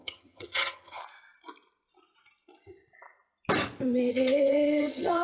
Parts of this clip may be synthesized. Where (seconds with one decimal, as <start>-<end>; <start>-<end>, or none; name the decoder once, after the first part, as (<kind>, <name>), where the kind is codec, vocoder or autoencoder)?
0.0-1.0 (vocoder, HiFi-GAN); 4.1-5.2